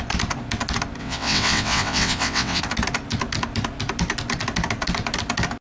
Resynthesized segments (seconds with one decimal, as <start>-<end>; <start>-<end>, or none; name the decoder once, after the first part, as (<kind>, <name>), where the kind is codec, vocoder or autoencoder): 1.0-2.6 (vocoder, WaveNeXt)